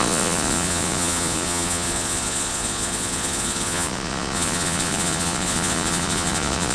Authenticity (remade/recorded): remade